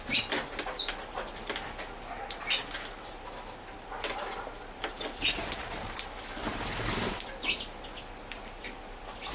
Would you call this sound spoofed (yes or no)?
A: no